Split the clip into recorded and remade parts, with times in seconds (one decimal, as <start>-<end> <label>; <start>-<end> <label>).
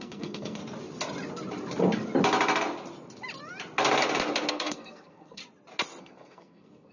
0.0-0.6 remade; 0.6-4.5 recorded; 4.5-5.4 remade; 5.4-6.0 recorded; 6.0-6.9 remade